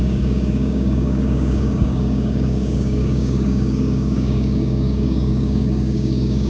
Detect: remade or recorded remade